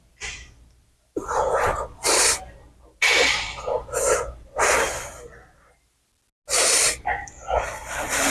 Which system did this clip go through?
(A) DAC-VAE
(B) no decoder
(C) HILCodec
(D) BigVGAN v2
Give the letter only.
B